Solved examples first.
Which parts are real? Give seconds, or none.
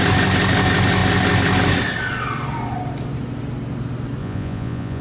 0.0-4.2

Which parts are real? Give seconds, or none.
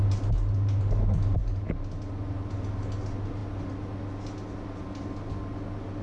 0.0-6.0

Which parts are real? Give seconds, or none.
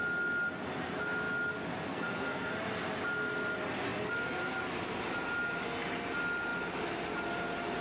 0.0-1.9; 2.5-7.8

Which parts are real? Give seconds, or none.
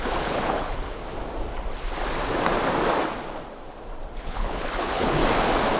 1.0-4.2; 5.2-5.8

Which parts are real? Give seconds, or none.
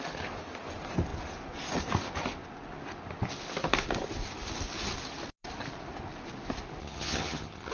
0.0-6.8